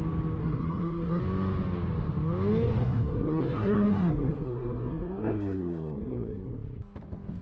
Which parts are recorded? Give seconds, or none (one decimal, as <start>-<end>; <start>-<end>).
0.0-0.4; 1.2-2.8; 6.5-7.4